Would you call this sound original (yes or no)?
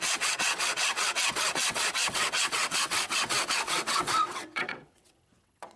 no